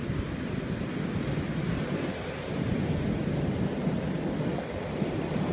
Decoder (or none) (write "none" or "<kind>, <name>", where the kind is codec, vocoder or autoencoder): none